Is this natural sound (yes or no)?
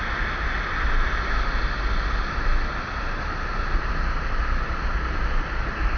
yes